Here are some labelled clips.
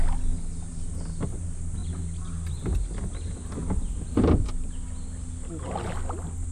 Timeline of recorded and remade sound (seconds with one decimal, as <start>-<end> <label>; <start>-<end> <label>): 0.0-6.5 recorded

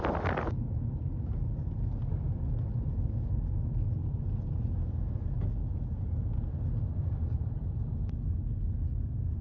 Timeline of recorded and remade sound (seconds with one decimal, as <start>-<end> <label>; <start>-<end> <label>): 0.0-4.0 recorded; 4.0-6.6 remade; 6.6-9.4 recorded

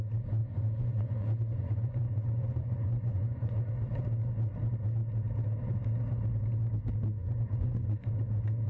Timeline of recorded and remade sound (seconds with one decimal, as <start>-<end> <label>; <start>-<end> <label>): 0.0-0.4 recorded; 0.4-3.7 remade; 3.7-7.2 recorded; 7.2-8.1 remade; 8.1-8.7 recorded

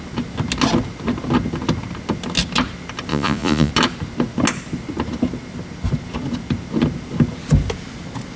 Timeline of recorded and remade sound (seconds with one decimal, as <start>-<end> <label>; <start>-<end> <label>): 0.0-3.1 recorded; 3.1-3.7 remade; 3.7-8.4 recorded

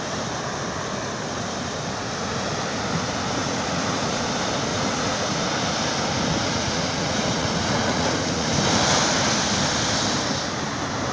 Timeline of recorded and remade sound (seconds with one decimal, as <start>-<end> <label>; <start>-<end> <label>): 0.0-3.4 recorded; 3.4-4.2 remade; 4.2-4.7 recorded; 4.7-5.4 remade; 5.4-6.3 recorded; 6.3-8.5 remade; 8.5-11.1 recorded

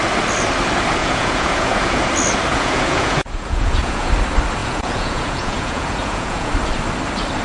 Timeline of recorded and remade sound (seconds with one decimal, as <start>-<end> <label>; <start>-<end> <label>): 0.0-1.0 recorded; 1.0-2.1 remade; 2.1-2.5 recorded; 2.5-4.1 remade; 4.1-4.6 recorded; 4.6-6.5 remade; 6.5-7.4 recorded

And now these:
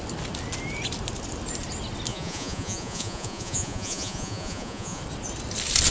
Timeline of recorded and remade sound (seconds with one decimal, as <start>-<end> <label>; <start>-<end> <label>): 0.0-2.1 recorded; 2.1-5.0 remade; 5.0-5.9 recorded

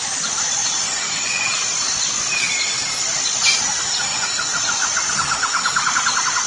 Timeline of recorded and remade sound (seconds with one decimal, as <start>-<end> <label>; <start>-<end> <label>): 0.0-0.6 recorded; 0.6-1.5 remade; 1.5-4.1 recorded; 4.1-5.1 remade; 5.1-6.5 recorded